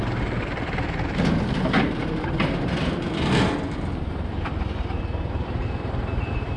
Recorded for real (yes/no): no